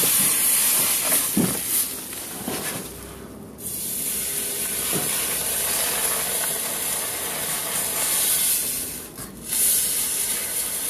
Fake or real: real